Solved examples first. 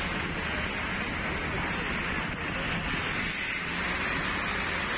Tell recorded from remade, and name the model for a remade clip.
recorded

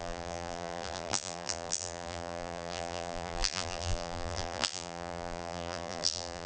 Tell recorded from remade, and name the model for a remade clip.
remade, vocoder, BigVGAN v2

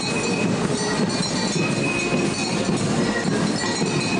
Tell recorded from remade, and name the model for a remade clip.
recorded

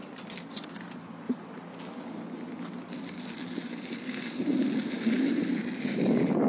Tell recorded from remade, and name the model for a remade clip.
recorded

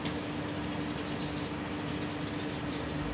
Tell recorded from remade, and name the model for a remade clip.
recorded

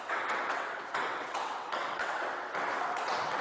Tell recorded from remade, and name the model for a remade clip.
remade, vocoder, WaveNeXt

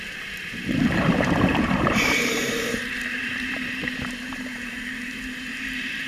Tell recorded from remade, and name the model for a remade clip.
remade, vocoder, BigVGAN v2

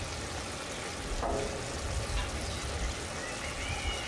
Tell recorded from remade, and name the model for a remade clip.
recorded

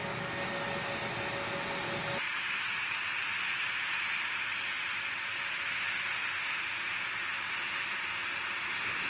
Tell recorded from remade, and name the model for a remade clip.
recorded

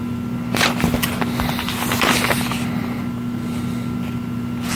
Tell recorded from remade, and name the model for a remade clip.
recorded